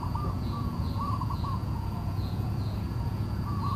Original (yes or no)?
no